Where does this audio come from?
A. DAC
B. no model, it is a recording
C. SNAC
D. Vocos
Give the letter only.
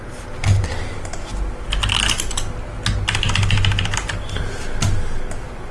B